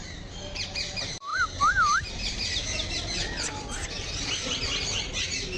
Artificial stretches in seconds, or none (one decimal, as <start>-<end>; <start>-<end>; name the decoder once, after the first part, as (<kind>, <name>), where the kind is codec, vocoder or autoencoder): none